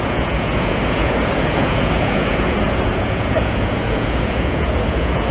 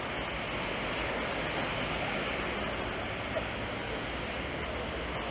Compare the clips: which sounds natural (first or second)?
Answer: second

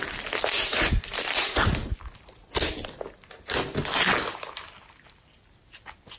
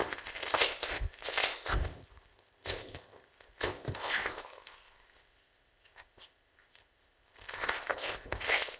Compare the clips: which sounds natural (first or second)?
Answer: first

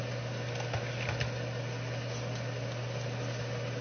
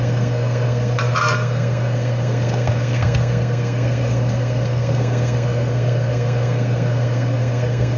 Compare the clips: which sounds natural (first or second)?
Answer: first